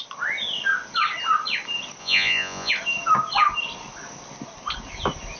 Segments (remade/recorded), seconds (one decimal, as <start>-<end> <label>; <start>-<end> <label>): 0.0-2.0 recorded; 2.0-2.7 remade; 2.7-5.4 recorded